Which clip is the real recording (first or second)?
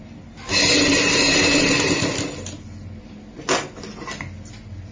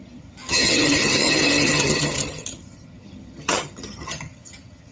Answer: first